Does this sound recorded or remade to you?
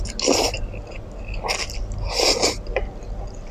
recorded